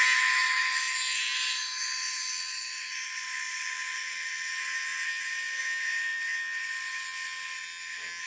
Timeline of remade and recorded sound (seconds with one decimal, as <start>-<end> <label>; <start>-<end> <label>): 0.0-6.1 recorded; 6.1-7.0 remade; 7.0-8.3 recorded